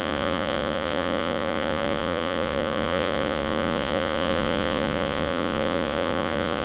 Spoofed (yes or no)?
yes